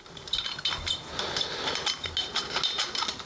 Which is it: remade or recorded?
recorded